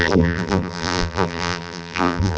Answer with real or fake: fake